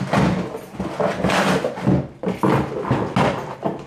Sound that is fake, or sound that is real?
real